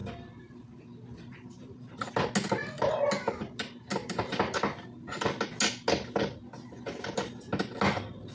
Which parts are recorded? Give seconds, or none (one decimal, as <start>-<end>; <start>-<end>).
2.1-3.9; 5.4-8.3